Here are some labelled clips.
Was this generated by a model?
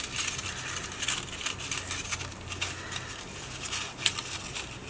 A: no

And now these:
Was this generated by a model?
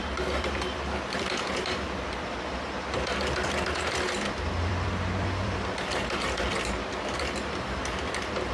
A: yes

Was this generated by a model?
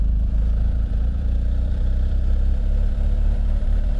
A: yes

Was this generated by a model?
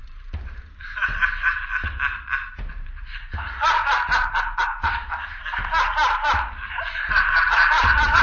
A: yes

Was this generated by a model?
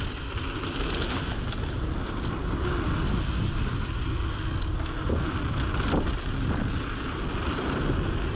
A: no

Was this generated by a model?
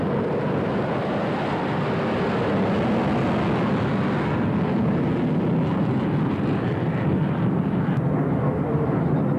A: no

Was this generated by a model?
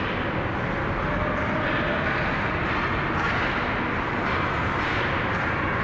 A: no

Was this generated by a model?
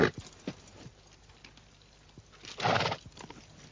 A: no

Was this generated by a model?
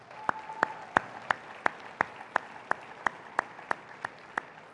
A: yes